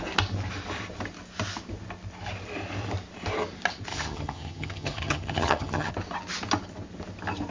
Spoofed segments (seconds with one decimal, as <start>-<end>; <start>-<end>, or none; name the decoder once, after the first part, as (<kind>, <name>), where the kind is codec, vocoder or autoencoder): 3.9-5.9 (vocoder, HiFi-GAN)